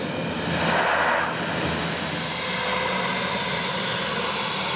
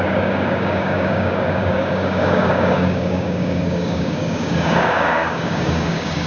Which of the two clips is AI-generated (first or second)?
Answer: second